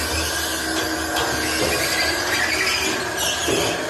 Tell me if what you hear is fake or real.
real